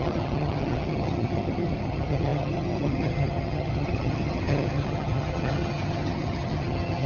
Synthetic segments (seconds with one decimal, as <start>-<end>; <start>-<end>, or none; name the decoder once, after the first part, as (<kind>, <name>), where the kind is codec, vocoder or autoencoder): 0.0-7.1 (vocoder, HiFi-GAN)